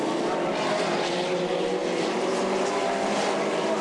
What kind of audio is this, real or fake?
fake